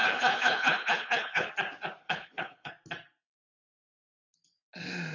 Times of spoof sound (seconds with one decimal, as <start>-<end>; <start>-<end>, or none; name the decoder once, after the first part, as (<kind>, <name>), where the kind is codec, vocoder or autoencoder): 0.0-1.5 (codec, HILCodec); 2.0-2.7